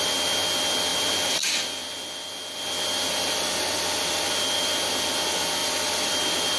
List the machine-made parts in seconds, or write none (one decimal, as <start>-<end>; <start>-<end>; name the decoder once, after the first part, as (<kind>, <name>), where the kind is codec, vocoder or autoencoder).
5.6-6.1 (vocoder, BigVGAN v2)